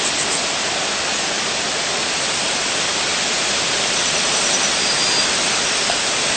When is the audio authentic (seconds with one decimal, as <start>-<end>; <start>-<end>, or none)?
0.0-6.4